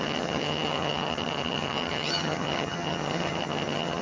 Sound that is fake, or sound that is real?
fake